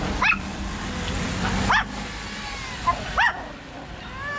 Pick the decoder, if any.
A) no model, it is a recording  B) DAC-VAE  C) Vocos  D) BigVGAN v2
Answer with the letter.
A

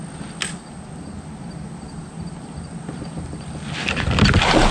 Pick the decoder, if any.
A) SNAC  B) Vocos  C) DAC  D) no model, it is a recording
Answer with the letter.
D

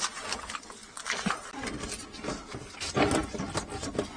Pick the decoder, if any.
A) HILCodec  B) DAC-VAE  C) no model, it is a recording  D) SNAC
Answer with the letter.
C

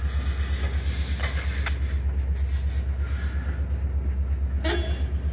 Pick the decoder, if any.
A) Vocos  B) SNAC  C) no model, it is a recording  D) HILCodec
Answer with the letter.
C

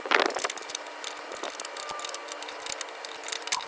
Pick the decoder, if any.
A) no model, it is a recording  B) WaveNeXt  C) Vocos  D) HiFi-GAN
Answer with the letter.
A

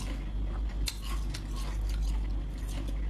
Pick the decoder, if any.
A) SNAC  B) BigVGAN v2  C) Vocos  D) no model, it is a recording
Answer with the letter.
D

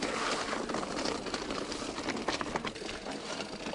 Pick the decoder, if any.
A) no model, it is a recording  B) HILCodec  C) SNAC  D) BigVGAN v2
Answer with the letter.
A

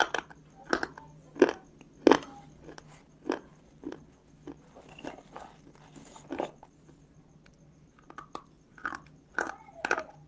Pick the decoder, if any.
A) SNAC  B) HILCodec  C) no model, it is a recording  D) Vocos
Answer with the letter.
C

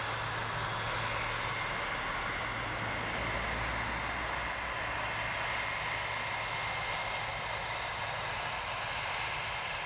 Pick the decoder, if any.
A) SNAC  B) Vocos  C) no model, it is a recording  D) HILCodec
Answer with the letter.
C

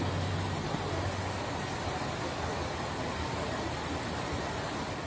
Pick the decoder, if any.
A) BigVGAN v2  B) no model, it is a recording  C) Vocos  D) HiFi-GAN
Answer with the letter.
B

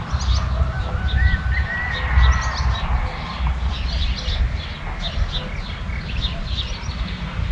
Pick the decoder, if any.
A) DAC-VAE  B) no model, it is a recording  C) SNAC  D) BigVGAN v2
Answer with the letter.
B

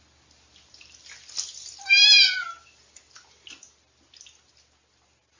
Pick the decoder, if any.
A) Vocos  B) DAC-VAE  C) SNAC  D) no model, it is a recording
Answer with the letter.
D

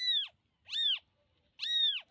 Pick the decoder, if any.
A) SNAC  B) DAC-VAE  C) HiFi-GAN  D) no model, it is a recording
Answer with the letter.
D